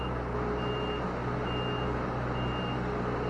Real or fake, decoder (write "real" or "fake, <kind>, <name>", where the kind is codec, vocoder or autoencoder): real